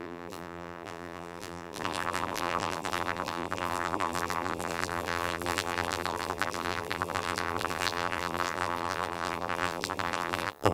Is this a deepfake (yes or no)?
yes